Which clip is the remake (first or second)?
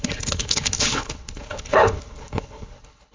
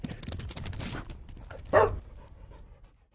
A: first